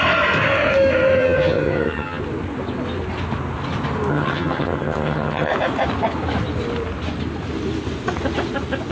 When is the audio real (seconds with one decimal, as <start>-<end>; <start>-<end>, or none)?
0.0-1.2; 2.2-4.1; 5.5-8.9